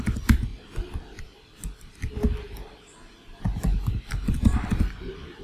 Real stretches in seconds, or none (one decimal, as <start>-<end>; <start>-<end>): 0.0-5.4